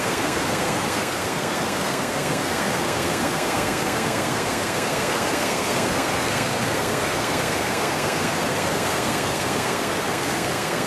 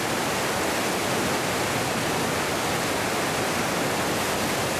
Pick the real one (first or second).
second